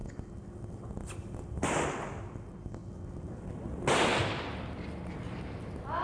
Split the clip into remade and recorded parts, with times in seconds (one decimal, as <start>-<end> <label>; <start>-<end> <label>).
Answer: 0.0-6.0 recorded